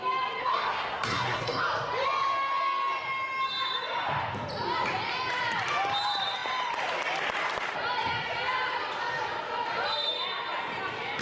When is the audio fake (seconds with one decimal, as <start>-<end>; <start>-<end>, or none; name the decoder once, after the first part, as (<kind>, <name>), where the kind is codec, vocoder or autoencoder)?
0.4-1.6 (codec, SNAC)